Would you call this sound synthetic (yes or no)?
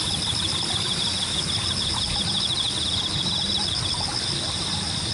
yes